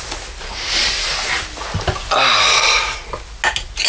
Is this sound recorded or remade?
recorded